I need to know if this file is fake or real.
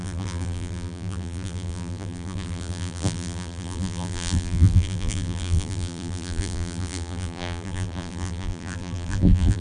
fake